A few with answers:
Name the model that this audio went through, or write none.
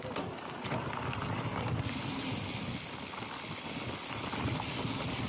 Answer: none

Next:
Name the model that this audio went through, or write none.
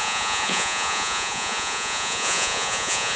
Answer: vocoder, Vocos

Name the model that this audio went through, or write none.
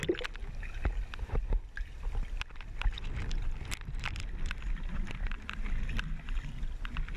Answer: none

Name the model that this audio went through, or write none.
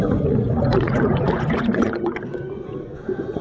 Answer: vocoder, Vocos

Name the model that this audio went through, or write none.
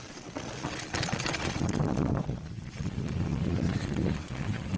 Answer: vocoder, Vocos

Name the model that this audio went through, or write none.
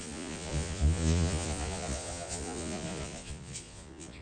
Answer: vocoder, Vocos